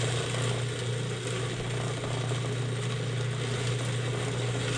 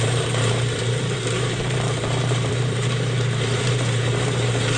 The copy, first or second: second